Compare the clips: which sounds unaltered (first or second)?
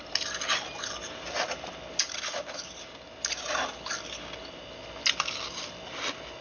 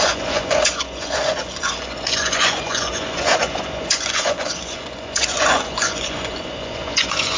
first